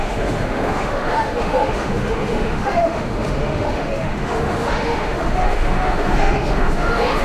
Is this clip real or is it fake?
fake